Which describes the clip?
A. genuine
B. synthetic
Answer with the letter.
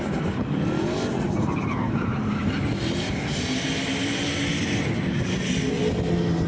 A